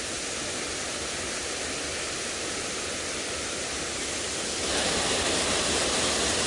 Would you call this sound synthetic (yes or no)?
no